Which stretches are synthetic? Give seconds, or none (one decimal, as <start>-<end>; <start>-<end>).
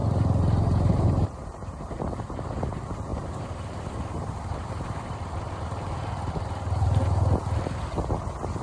0.0-1.9; 3.1-6.3